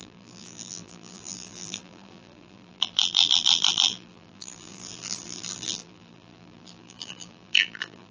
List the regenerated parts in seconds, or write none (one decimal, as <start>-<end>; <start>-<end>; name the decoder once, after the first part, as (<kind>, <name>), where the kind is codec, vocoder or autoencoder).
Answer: 0.0-8.1 (vocoder, BigVGAN v2)